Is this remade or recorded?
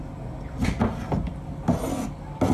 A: recorded